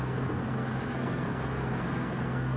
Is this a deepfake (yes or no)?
yes